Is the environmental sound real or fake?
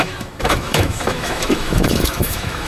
fake